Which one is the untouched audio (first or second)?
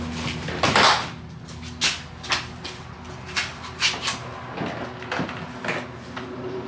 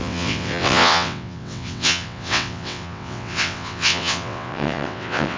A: first